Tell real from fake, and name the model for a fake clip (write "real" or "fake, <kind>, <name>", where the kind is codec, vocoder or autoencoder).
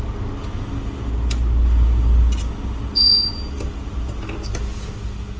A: real